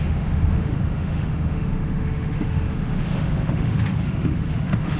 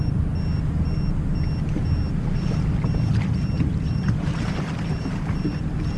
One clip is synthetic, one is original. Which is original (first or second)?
second